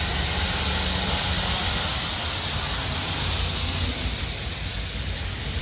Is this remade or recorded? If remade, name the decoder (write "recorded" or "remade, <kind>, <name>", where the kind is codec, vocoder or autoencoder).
recorded